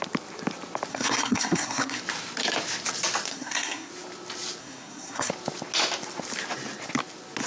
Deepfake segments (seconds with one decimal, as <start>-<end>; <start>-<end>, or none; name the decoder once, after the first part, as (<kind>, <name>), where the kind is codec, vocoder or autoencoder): 0.9-2.0 (codec, SNAC); 3.3-3.9; 4.6-5.3